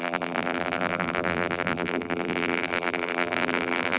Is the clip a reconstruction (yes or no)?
yes